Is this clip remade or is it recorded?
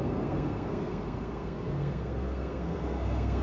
remade